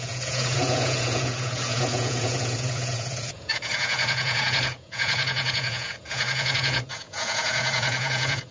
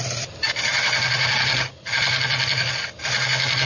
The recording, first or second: second